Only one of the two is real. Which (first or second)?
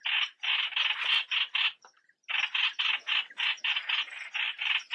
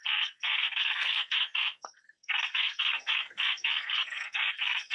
first